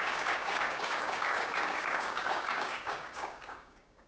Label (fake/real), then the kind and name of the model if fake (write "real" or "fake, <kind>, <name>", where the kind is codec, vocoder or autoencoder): fake, codec, DAC